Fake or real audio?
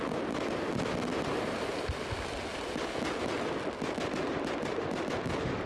real